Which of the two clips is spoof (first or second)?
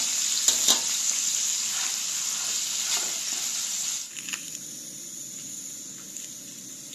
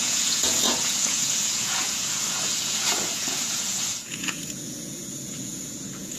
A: second